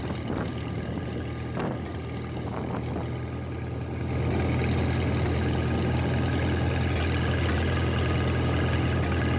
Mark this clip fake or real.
real